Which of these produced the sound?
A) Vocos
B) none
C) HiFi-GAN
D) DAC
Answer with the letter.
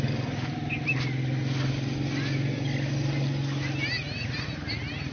B